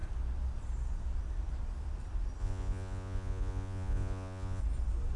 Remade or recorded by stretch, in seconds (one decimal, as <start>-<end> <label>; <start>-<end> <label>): 0.0-2.4 recorded; 2.4-4.6 remade; 4.6-5.2 recorded